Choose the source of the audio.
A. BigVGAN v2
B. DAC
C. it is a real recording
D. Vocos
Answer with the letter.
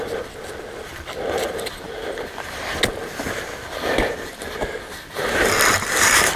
C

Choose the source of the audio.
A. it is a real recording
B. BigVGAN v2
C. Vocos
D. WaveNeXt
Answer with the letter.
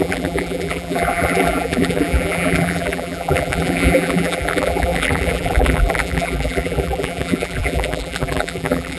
B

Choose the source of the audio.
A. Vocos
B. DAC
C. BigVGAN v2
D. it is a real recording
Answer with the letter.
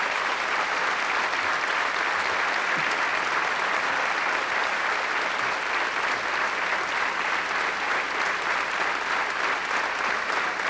D